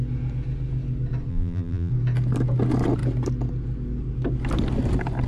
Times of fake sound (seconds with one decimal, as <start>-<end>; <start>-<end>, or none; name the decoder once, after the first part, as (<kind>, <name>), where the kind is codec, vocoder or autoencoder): 1.3-1.9 (vocoder, BigVGAN v2)